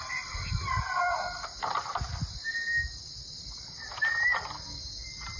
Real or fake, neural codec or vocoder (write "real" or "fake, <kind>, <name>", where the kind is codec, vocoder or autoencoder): real